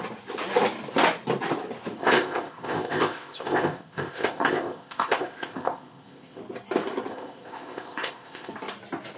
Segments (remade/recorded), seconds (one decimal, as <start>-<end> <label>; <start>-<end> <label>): 0.0-2.0 recorded; 2.0-6.4 remade; 6.4-7.1 recorded; 7.1-8.5 remade; 8.5-9.2 recorded